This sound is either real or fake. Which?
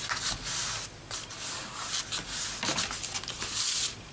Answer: real